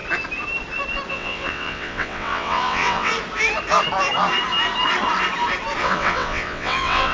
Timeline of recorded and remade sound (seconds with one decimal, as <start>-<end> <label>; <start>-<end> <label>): 0.0-1.1 recorded; 1.1-3.1 remade; 3.1-5.8 recorded; 5.8-7.1 remade

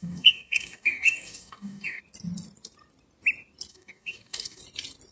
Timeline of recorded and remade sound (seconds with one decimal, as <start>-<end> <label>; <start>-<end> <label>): 0.0-2.0 remade; 2.0-3.7 recorded; 3.7-4.6 remade; 4.6-5.1 recorded

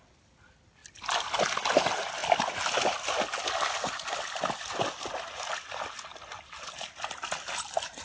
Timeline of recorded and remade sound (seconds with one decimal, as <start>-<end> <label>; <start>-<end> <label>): 0.0-8.0 recorded